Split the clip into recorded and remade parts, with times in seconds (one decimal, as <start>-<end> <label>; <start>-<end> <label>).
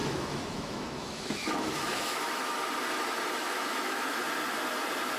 0.0-2.6 remade; 2.6-3.4 recorded; 3.4-4.2 remade; 4.2-5.2 recorded